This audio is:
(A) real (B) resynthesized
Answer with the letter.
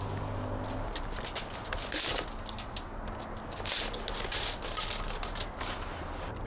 A